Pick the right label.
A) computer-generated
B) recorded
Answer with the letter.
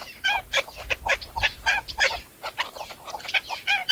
A